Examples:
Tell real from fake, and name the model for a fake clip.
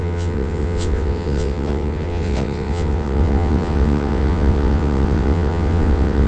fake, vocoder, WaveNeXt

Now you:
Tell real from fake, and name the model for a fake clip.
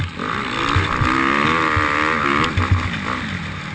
real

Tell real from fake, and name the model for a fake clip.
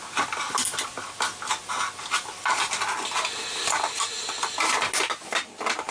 real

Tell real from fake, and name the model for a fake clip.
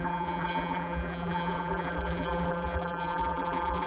fake, vocoder, BigVGAN v2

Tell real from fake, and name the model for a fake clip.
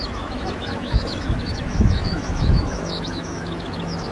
fake, autoencoder, DAC-VAE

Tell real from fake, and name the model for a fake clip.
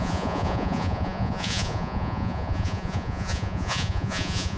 fake, vocoder, Vocos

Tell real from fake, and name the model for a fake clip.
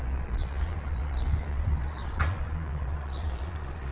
fake, vocoder, Vocos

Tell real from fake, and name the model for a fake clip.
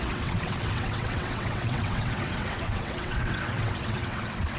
fake, vocoder, WaveNeXt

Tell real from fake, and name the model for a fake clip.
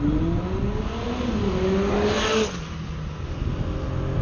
real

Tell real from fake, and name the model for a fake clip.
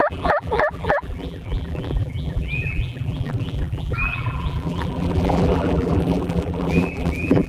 fake, vocoder, BigVGAN v2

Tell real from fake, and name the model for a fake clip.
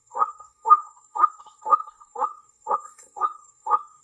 fake, codec, SNAC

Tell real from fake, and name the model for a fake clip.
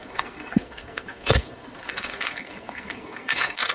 fake, codec, SNAC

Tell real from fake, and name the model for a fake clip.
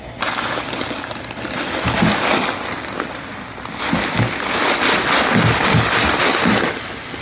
real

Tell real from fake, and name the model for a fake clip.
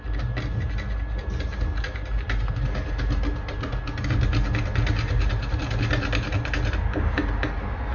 real